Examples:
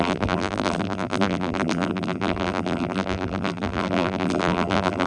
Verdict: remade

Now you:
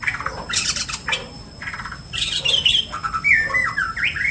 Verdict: recorded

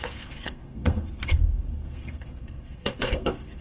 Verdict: remade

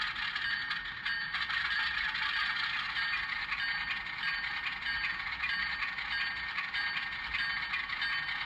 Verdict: recorded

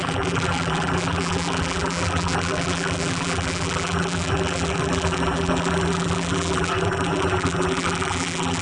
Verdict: remade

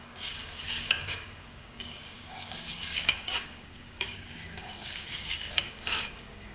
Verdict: remade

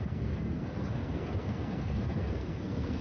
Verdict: remade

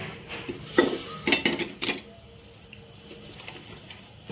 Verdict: recorded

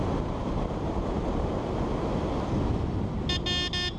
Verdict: recorded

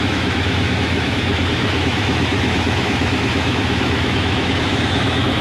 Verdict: remade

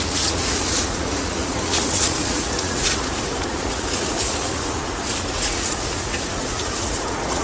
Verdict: remade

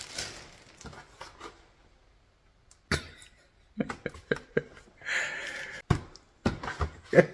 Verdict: recorded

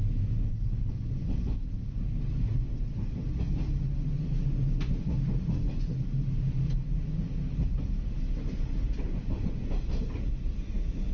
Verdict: recorded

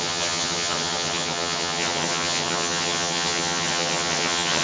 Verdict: remade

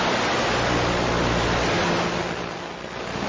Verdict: recorded